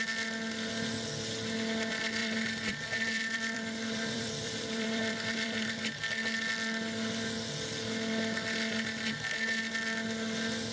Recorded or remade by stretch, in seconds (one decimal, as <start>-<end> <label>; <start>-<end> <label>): 0.0-2.2 recorded; 2.2-5.8 remade; 5.8-10.7 recorded